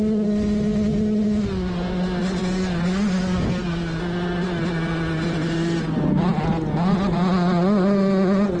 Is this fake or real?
real